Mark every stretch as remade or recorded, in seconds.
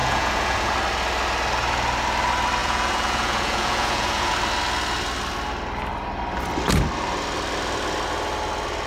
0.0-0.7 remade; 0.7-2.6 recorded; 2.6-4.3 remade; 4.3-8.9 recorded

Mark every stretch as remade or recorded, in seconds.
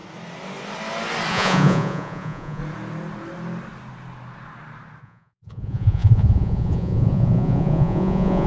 0.0-1.3 recorded; 1.3-2.6 remade; 2.6-5.0 recorded; 5.0-8.5 remade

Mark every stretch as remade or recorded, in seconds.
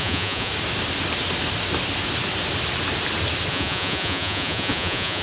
0.0-0.5 remade; 0.5-3.5 recorded; 3.5-5.2 remade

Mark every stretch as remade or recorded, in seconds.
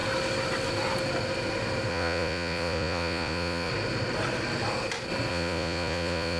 0.0-1.9 recorded; 1.9-3.7 remade; 3.7-5.3 recorded; 5.3-6.4 remade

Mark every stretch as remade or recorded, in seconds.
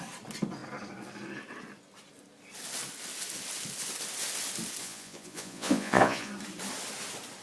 0.0-4.8 recorded; 4.8-6.3 remade; 6.3-7.4 recorded